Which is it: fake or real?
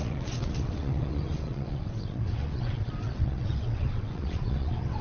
fake